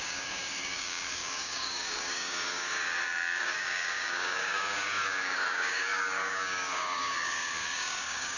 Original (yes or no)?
no